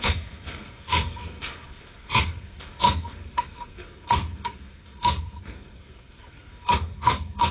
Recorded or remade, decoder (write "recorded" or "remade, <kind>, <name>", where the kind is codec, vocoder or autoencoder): remade, codec, SNAC